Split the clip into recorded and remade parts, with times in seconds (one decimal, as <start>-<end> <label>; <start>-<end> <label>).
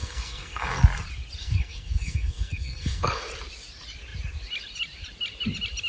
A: 0.0-0.8 remade; 0.8-1.4 recorded; 1.4-3.2 remade; 3.2-5.9 recorded